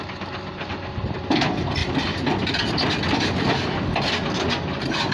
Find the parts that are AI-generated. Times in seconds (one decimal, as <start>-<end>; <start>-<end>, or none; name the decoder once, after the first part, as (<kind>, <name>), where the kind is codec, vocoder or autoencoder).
1.8-3.5 (vocoder, BigVGAN v2)